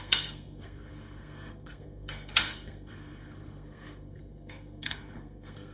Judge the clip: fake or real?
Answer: fake